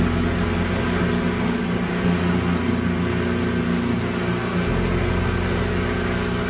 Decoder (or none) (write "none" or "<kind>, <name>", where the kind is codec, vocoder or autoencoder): none